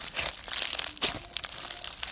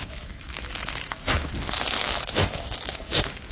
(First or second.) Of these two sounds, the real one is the first